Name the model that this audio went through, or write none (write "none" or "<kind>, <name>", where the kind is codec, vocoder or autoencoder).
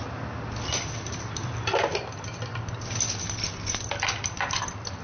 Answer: none